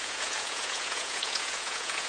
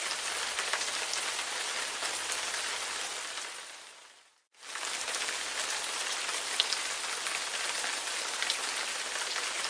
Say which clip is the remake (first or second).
first